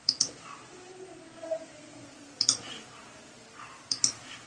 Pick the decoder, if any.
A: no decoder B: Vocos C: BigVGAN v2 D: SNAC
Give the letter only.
C